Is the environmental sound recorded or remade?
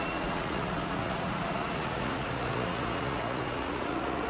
remade